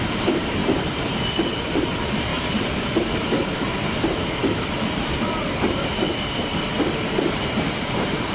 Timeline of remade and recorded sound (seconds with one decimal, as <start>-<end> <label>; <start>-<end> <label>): 0.0-0.6 remade; 0.6-1.5 recorded; 1.5-8.3 remade